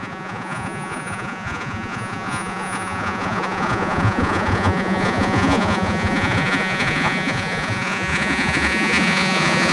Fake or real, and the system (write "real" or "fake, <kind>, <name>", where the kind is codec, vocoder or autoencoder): fake, vocoder, Vocos